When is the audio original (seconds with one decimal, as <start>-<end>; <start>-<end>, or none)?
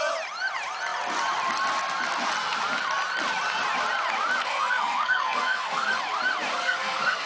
0.0-4.4; 6.0-6.6